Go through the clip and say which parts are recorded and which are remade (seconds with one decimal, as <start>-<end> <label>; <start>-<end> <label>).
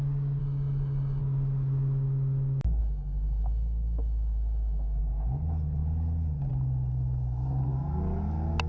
0.0-0.4 recorded; 0.4-1.2 remade; 1.2-2.8 recorded; 2.8-5.0 remade; 5.0-8.7 recorded